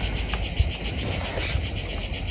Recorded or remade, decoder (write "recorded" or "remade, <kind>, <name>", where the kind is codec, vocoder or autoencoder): recorded